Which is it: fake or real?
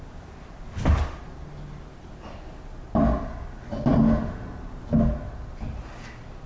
real